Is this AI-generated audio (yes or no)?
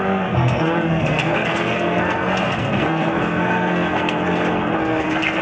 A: yes